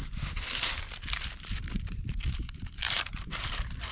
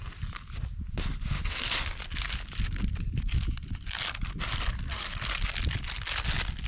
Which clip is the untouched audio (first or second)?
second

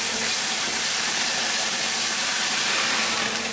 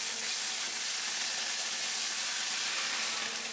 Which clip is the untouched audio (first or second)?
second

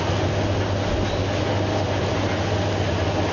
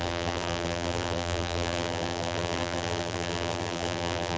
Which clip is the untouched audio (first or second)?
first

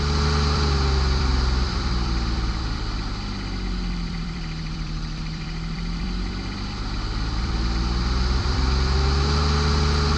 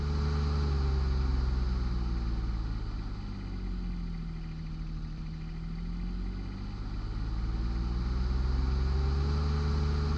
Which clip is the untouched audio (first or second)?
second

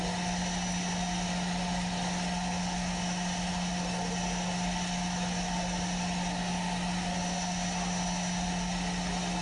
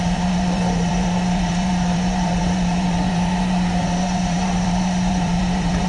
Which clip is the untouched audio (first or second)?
first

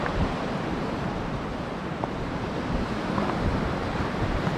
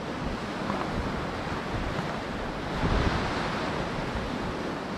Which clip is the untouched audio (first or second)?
second